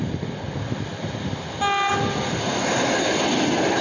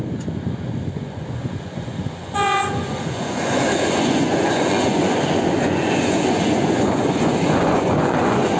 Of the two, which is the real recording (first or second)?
first